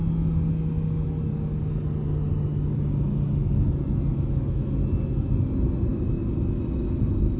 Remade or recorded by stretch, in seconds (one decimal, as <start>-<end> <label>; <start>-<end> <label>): 0.0-4.1 recorded; 4.1-4.7 remade; 4.7-5.9 recorded; 5.9-7.0 remade; 7.0-7.4 recorded